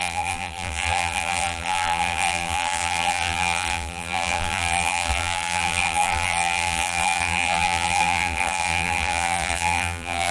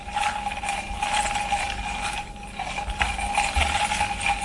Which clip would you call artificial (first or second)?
first